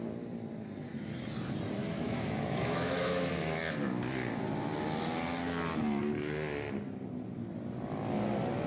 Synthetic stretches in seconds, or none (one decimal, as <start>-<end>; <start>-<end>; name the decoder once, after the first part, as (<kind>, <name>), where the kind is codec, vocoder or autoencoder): 1.8-3.3 (autoencoder, DAC-VAE)